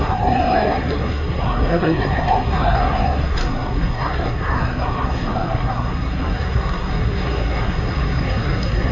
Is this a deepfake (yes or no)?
yes